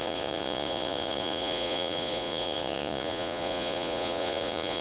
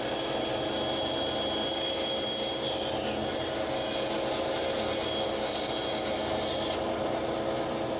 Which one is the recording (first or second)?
second